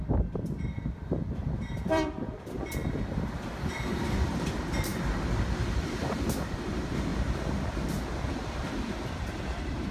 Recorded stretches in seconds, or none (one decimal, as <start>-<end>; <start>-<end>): 2.8-4.0; 4.9-5.8